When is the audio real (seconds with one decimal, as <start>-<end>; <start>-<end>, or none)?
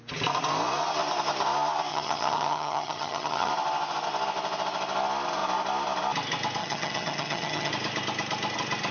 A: 0.0-1.9; 3.5-6.6; 7.7-8.9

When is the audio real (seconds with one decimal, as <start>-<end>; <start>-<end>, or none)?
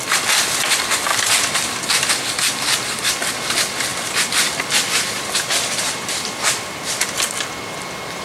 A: 0.0-1.1; 2.1-3.9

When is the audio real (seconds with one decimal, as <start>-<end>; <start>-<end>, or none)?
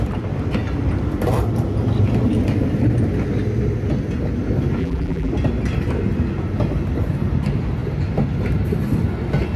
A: 0.0-4.8; 5.3-9.6